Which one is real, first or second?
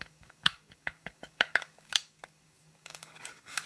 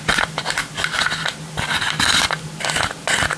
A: second